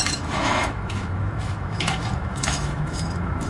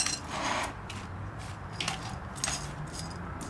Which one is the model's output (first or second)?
first